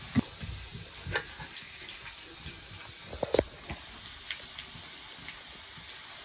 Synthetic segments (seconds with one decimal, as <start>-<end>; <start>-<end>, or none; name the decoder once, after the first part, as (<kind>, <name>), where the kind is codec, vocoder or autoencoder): none